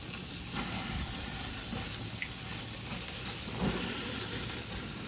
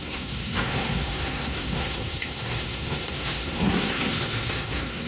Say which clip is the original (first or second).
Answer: first